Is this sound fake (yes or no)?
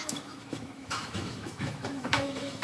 yes